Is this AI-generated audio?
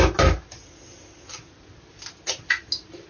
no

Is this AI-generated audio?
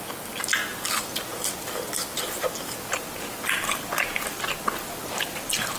no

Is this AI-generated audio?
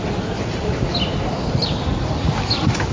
yes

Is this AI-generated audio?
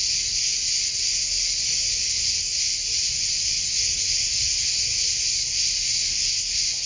no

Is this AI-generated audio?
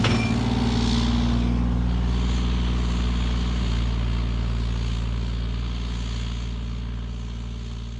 no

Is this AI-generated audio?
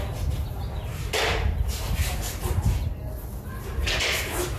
no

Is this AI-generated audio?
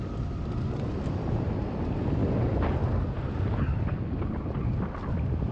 no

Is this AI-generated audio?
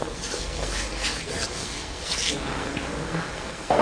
yes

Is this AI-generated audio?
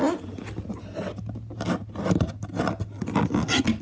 no